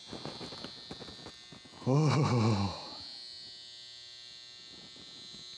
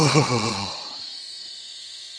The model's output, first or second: second